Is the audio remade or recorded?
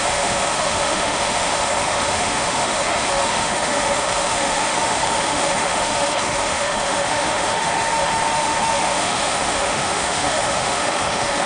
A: remade